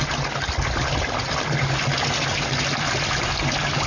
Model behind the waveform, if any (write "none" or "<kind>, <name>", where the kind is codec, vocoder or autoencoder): none